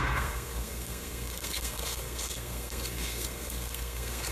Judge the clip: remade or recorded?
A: remade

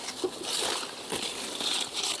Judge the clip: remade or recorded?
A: recorded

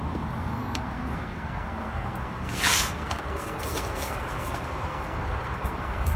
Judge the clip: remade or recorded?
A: remade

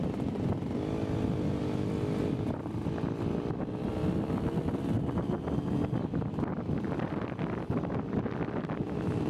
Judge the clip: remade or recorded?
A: recorded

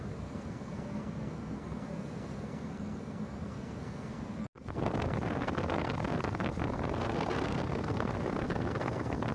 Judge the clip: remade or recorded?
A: remade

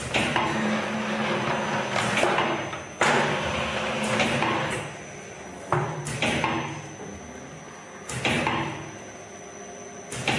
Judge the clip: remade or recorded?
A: recorded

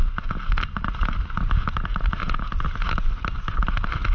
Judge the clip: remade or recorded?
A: recorded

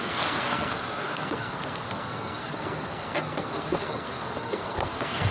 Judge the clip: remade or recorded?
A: remade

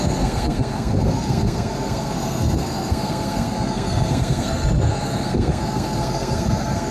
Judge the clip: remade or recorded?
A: remade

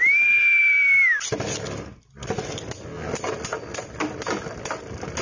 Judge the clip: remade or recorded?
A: recorded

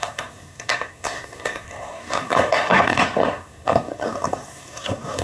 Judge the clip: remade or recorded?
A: remade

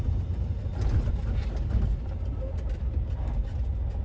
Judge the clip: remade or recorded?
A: recorded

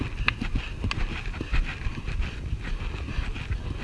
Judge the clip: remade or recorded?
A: recorded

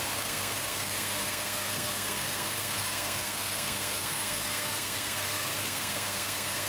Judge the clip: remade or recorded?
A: remade